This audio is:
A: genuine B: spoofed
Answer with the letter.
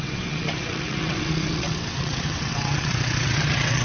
B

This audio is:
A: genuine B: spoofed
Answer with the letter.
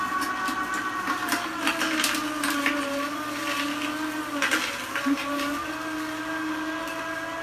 A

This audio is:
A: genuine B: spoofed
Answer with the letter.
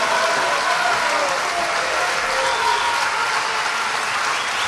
A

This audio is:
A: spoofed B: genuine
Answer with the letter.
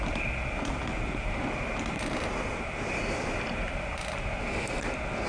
B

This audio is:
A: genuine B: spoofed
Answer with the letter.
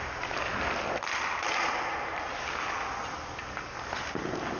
A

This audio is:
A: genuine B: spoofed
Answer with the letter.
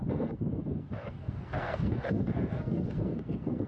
B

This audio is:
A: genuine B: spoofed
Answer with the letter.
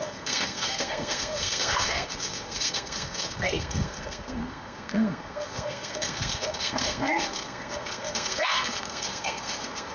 B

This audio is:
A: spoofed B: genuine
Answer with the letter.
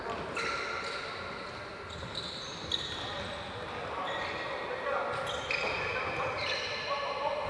B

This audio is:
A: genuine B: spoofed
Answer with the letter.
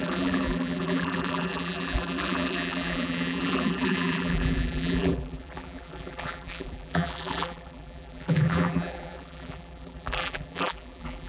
B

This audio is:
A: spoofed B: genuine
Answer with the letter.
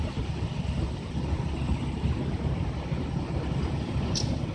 A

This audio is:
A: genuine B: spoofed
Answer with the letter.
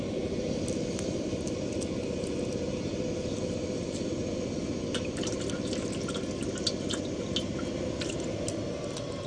A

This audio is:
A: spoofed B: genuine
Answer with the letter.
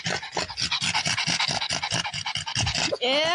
B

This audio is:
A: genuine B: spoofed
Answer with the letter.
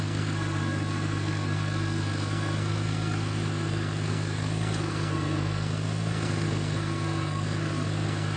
B